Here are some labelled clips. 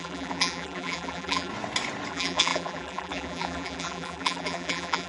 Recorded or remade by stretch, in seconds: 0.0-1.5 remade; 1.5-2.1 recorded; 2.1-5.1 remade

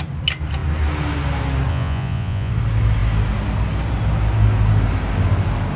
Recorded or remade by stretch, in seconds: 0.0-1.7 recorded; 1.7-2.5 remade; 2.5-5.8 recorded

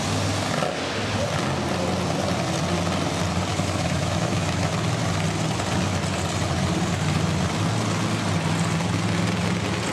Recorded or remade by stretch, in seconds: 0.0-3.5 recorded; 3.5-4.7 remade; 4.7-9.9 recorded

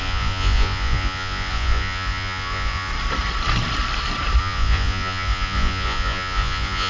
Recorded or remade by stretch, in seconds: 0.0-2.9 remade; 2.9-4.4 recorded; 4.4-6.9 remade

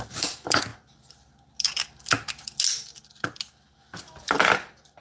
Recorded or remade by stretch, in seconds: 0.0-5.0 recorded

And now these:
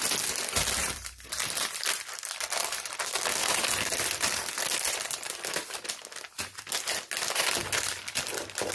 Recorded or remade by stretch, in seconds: 0.0-0.8 recorded; 0.8-6.0 remade; 6.0-7.6 recorded; 7.6-8.7 remade

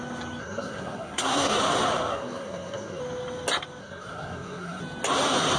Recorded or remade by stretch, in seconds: 0.0-0.4 recorded; 0.4-1.6 remade; 1.6-2.1 recorded; 2.1-3.0 remade; 3.0-3.8 recorded; 3.8-4.8 remade; 4.8-5.6 recorded